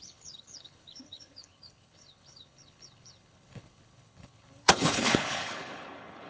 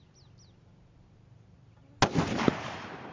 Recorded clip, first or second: second